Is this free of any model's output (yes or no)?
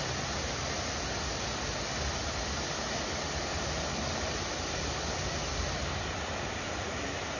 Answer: yes